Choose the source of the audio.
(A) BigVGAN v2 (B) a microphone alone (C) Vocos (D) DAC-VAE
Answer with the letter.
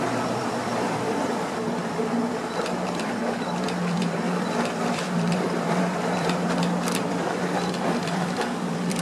A